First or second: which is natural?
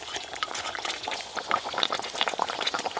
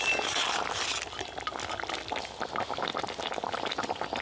second